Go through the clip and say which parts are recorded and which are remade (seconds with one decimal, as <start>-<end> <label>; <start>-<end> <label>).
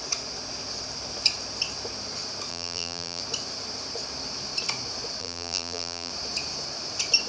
0.0-2.5 recorded; 2.5-3.2 remade; 3.2-5.2 recorded; 5.2-6.1 remade; 6.1-7.3 recorded